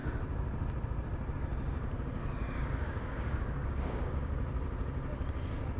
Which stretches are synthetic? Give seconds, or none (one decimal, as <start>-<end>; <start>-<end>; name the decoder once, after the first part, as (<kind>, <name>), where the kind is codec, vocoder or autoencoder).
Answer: 2.4-4.3 (codec, DAC)